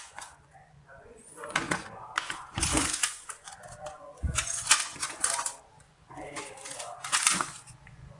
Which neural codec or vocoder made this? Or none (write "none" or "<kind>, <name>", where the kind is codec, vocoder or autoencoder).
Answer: vocoder, Vocos